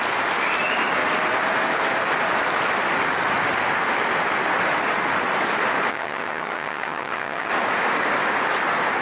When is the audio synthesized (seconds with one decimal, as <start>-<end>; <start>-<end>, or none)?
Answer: 5.9-7.5